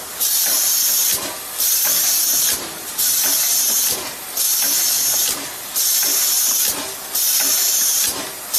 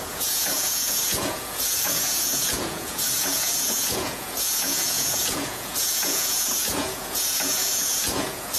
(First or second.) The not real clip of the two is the second